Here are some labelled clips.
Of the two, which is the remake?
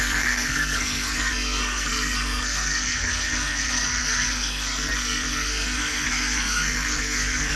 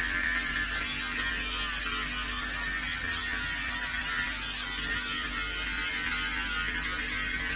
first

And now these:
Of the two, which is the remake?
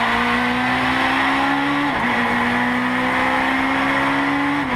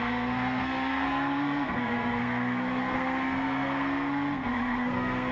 second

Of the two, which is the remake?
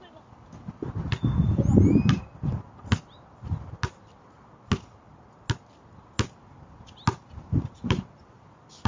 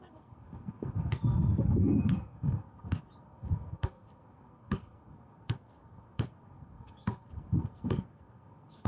second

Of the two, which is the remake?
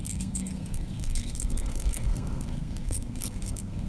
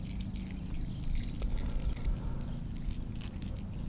first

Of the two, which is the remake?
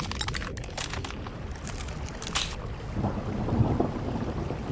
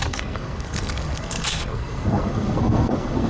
second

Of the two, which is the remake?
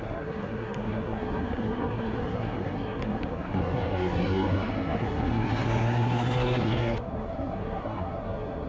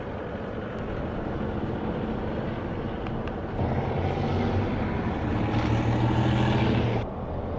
first